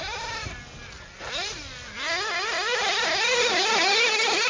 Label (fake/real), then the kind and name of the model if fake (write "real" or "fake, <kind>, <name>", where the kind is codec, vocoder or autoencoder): real